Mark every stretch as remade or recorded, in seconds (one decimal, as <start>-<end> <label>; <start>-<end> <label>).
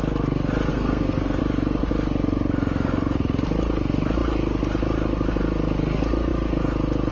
0.0-0.7 recorded; 0.7-1.4 remade; 1.4-7.1 recorded